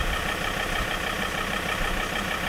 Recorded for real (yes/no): no